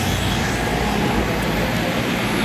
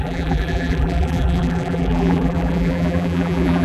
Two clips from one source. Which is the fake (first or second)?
second